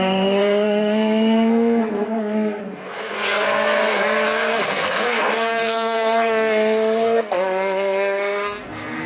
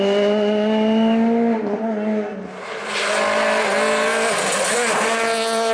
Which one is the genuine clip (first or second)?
second